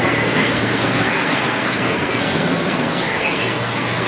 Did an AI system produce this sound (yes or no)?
yes